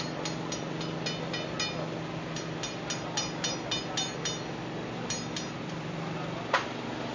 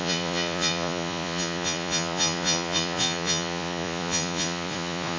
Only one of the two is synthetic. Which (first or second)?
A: second